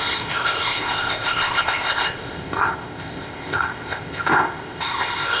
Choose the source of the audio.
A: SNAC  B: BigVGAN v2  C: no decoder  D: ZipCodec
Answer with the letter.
D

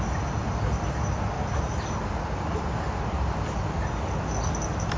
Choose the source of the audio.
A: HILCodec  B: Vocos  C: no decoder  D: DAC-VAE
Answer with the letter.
C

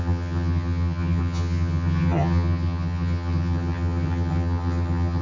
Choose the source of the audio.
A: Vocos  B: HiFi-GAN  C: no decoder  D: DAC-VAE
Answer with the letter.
B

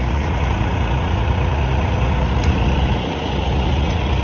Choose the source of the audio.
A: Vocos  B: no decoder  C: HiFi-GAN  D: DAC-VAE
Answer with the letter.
A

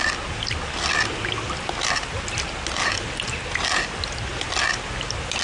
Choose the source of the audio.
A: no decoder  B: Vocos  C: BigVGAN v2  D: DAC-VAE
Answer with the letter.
A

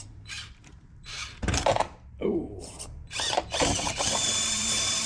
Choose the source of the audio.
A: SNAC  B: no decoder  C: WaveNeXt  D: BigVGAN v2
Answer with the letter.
D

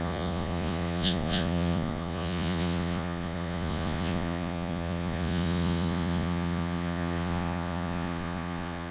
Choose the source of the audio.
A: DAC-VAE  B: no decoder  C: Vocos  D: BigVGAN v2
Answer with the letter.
C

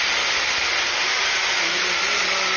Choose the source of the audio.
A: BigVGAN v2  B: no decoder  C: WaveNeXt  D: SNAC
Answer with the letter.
B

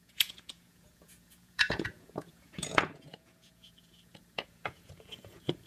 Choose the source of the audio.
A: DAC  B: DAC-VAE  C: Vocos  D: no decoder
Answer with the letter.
C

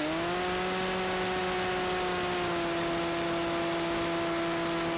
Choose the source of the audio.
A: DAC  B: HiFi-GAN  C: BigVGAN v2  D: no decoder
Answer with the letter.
D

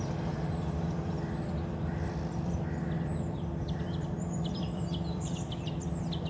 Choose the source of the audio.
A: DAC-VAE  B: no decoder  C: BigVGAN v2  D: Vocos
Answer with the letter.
C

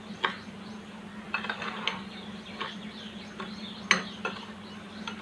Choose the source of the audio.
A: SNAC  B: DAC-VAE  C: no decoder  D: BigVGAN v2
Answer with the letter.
C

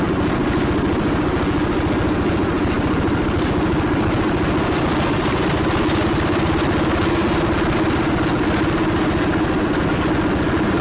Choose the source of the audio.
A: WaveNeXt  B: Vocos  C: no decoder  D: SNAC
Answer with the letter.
C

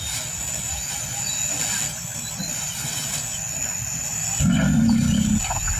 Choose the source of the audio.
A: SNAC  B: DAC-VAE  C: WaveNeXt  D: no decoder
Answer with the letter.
D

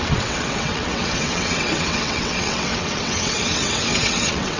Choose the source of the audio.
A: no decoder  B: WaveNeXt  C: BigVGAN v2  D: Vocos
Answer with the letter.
B